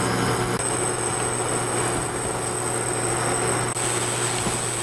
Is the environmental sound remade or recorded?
recorded